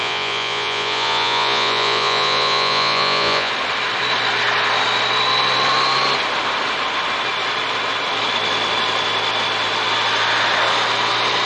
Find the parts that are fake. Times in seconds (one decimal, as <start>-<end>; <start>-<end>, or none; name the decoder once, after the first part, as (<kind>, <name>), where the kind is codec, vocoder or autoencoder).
0.0-3.5 (vocoder, Vocos)